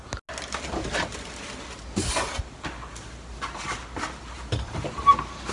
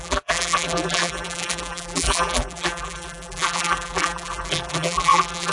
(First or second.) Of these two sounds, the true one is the first